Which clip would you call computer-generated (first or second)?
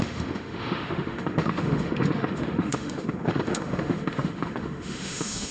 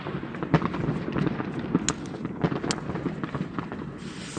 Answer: first